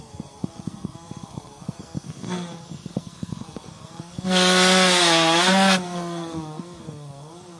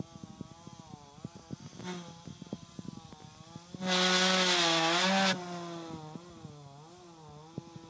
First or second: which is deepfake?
first